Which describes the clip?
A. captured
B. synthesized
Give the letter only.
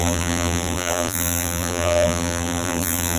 B